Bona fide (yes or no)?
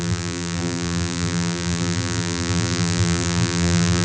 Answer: no